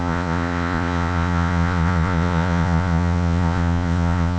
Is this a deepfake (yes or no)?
yes